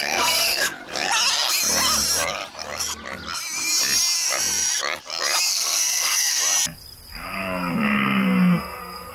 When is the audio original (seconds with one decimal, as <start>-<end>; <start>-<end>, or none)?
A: 0.8-5.5; 6.4-7.1